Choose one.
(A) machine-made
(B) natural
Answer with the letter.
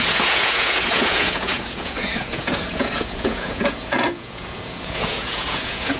A